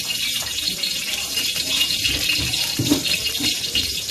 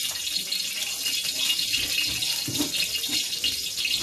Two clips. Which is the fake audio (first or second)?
first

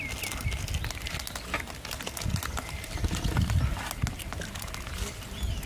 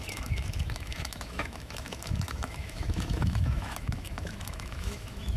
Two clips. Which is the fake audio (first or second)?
second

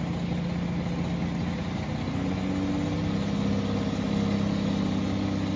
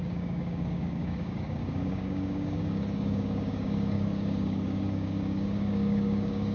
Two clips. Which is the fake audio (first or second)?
second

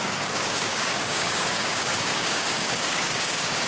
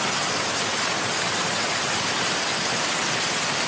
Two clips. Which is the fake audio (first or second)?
first